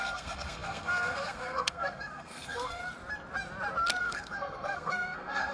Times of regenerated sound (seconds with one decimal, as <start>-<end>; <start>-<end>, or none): 0.0-2.8; 4.0-5.5